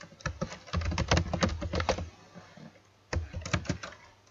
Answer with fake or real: real